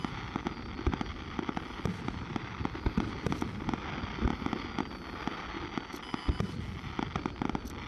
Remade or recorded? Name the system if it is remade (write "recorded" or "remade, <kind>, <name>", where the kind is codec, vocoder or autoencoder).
recorded